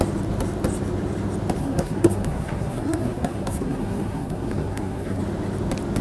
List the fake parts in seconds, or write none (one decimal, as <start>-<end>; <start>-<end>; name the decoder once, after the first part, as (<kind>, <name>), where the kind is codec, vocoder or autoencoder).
1.6-5.2 (codec, SNAC)